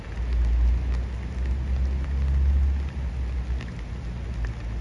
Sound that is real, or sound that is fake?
real